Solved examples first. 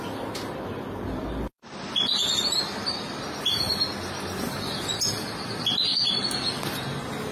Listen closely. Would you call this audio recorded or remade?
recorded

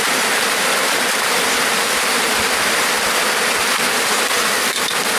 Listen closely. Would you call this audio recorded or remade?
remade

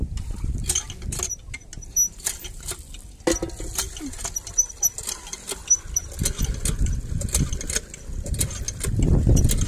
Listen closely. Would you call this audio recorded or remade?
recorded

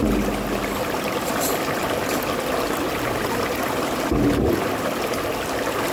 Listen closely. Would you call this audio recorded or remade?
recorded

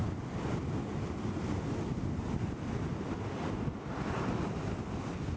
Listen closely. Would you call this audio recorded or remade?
recorded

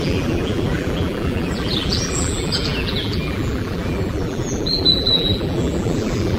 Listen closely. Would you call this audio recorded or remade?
remade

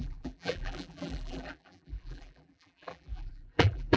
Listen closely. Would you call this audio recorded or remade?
remade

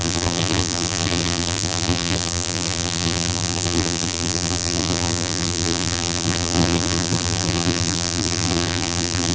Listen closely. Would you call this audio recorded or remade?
remade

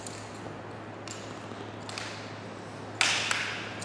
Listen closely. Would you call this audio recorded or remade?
recorded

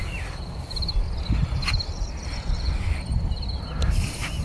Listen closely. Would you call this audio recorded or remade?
remade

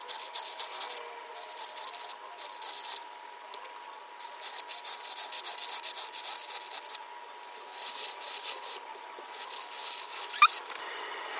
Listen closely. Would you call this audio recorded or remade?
recorded